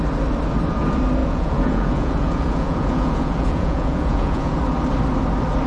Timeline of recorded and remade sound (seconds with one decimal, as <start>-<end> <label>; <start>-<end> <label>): 0.0-1.2 recorded; 1.2-4.6 remade; 4.6-5.7 recorded